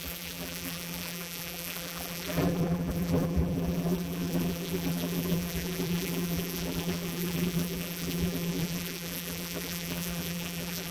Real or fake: fake